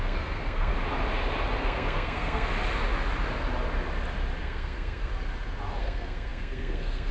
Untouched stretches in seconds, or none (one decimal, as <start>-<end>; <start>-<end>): 0.7-1.6; 2.5-4.4; 5.1-5.8